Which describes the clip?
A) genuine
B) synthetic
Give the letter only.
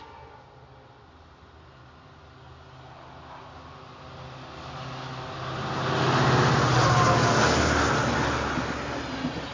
A